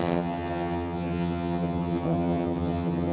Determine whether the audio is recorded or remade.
remade